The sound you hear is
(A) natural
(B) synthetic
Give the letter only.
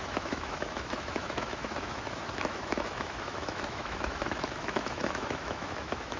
B